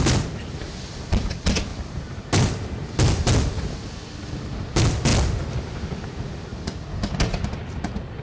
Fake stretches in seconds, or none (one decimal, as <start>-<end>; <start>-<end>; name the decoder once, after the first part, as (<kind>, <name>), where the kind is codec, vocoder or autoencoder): 1.7-3.8 (vocoder, BigVGAN v2)